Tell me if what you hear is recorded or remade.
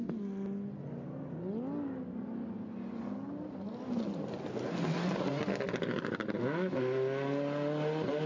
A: recorded